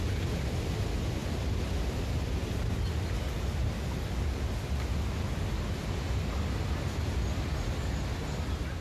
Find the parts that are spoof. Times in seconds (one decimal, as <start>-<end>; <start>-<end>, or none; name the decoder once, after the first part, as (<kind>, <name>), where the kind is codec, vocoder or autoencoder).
none